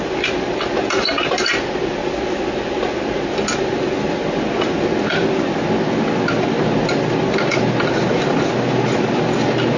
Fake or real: real